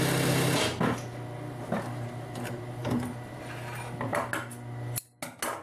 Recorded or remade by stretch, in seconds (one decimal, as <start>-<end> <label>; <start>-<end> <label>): 0.0-5.6 recorded